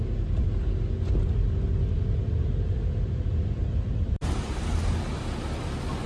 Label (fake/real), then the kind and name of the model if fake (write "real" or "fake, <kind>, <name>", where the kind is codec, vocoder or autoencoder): real